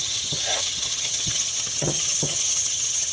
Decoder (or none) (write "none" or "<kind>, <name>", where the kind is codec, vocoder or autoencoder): vocoder, HiFi-GAN